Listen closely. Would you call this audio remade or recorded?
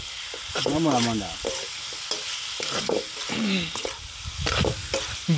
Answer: recorded